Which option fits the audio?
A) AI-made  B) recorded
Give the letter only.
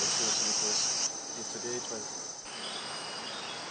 B